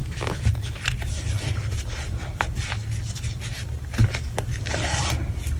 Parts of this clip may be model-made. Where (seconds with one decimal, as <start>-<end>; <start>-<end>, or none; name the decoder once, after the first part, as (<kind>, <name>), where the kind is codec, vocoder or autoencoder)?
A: 0.0-0.8 (codec, DAC); 4.0-4.6